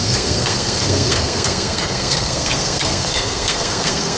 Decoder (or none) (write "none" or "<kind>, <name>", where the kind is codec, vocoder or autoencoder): codec, SNAC